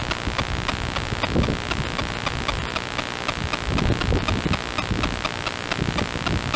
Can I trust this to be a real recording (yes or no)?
yes